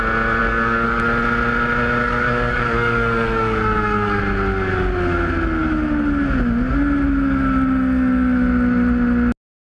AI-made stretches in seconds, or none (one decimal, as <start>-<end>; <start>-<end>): 0.4-1.0; 2.0-4.2